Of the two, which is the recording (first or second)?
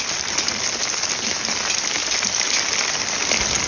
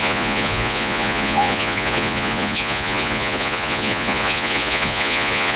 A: first